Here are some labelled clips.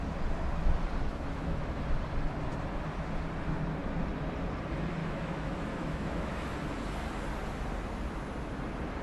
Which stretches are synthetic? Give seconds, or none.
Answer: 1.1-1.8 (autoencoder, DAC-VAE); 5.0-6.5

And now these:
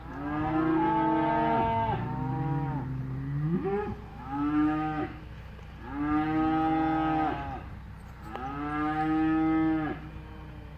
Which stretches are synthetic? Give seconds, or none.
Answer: 4.1-5.2 (autoencoder, DAC-VAE)

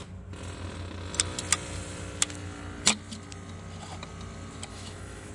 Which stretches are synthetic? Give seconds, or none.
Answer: 4.7-5.3 (autoencoder, DAC-VAE)